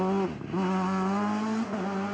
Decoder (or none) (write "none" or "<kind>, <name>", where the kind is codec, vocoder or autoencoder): none